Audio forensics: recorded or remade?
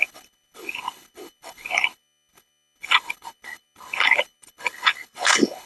remade